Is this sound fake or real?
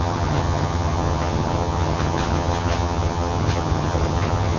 fake